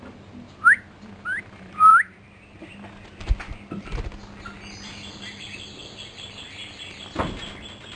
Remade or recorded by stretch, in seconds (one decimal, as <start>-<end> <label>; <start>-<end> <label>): 0.0-8.0 recorded